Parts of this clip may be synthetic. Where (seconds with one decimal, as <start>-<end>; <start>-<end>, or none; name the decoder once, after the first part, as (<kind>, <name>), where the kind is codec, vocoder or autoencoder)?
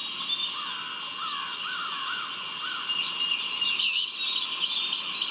none